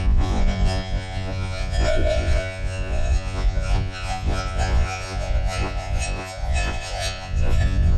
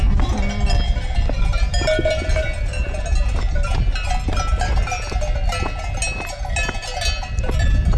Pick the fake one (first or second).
first